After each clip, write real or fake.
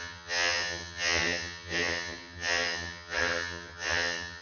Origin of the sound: fake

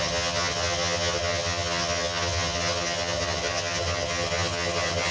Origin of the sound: fake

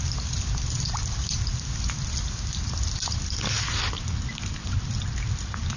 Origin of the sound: real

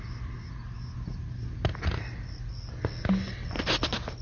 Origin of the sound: real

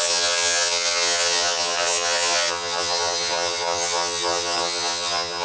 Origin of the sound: fake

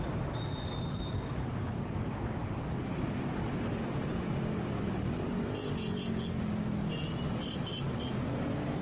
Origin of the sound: real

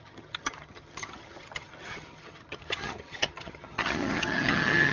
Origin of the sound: fake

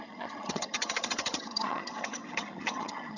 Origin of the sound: fake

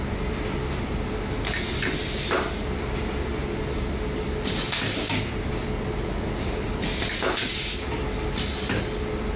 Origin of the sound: real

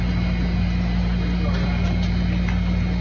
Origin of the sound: real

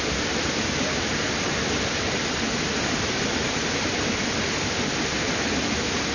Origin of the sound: real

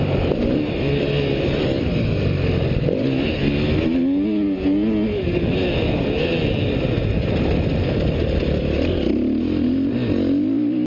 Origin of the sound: real